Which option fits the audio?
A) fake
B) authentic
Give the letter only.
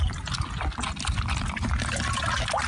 B